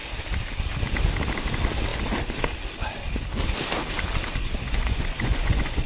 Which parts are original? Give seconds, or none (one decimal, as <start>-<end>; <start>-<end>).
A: 0.0-4.4